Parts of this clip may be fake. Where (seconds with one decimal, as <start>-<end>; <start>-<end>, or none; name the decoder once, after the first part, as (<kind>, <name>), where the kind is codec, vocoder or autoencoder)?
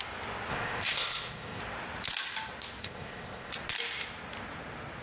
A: 0.5-1.6 (codec, ZipCodec); 2.8-3.5